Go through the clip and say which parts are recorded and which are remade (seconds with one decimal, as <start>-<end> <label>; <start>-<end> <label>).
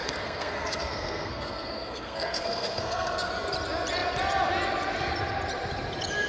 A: 0.0-3.3 remade; 3.3-6.3 recorded